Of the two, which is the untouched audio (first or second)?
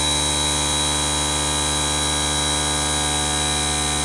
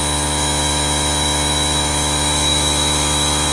first